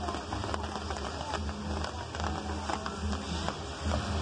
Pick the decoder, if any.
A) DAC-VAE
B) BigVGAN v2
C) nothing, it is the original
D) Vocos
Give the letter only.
C